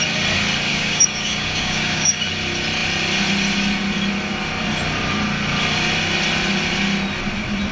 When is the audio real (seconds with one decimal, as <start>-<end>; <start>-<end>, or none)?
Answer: 0.0-0.7; 2.3-7.7